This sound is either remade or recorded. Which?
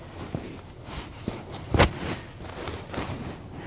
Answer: recorded